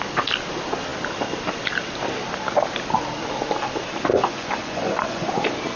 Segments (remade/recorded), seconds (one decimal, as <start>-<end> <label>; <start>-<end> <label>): 0.0-4.1 recorded; 4.1-5.3 remade; 5.3-5.8 recorded